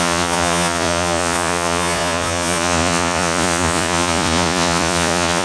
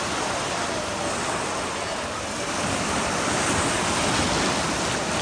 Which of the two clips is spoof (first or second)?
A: first